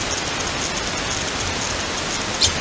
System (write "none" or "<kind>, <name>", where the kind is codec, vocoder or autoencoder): none